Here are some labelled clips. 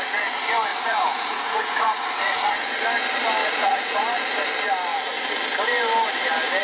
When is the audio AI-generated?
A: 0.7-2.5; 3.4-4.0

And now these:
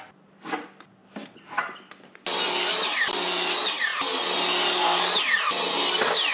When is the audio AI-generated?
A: none